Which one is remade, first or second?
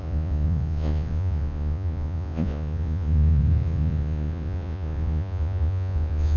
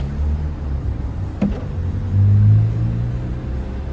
first